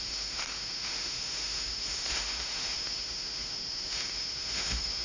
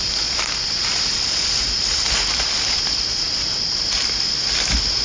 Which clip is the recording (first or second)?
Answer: second